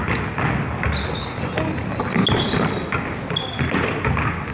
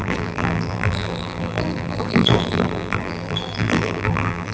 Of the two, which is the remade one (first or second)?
second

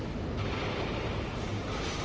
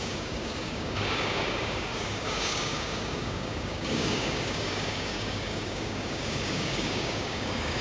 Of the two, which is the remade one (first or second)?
second